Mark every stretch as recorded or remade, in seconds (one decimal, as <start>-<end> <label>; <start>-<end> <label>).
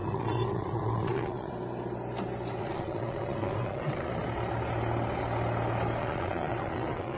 0.0-1.5 remade; 1.5-2.6 recorded; 2.6-4.1 remade; 4.1-6.0 recorded; 6.0-7.2 remade